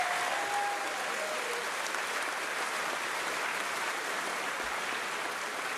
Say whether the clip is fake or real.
real